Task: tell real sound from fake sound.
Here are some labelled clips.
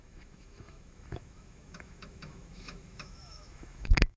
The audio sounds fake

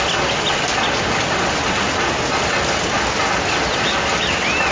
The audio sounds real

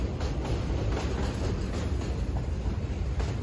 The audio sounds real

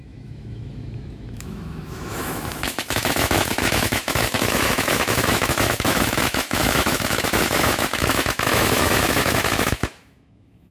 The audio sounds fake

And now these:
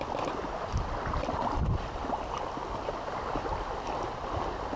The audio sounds real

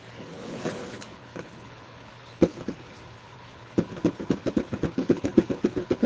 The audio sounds fake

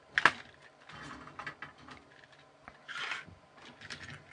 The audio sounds real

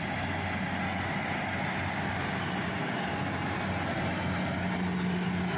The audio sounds real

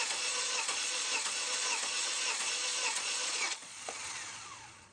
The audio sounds fake